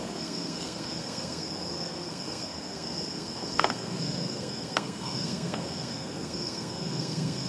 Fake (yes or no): yes